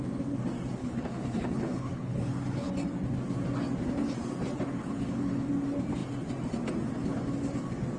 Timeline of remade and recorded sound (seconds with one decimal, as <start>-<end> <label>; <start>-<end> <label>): 0.0-0.8 recorded; 0.8-2.7 remade; 2.7-4.7 recorded; 4.7-5.5 remade; 5.5-8.0 recorded